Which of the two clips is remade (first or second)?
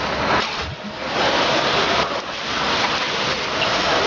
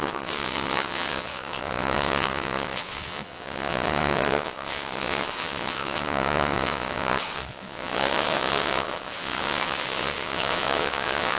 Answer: second